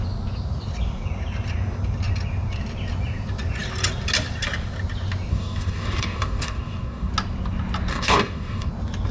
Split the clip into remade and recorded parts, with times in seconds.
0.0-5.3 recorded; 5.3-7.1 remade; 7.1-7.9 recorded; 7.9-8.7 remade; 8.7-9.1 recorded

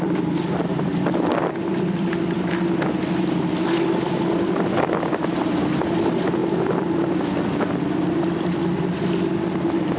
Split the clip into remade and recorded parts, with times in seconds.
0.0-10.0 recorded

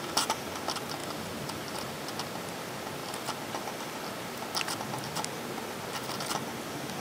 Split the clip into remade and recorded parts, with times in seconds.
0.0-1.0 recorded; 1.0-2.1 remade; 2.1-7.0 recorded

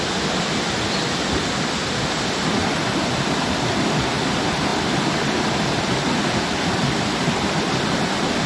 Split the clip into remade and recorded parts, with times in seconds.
0.0-2.6 recorded; 2.6-4.3 remade; 4.3-8.5 recorded